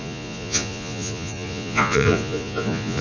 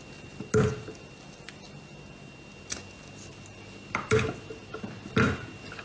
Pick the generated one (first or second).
first